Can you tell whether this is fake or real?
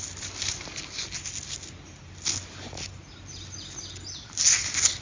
real